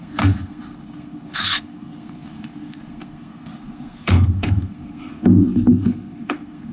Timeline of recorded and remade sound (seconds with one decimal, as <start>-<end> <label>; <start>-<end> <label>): 0.0-6.7 remade